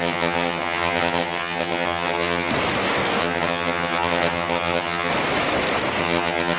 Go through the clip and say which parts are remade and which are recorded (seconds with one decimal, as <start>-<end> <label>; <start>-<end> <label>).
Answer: 0.0-2.5 remade; 2.5-3.2 recorded; 3.2-5.1 remade; 5.1-6.0 recorded; 6.0-6.6 remade